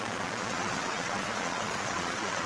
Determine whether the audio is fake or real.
fake